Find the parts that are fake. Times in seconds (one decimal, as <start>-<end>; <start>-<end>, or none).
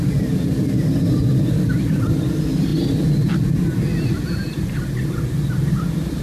none